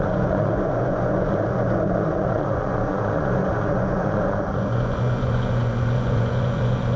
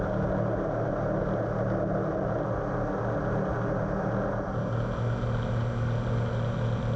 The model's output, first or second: first